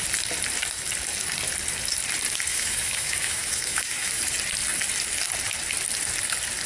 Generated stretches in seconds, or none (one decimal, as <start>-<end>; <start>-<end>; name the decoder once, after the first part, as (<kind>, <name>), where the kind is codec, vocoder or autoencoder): 2.5-4.2 (autoencoder, DAC-VAE)